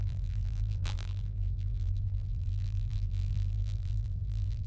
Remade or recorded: remade